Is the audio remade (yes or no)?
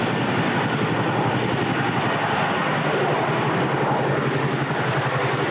no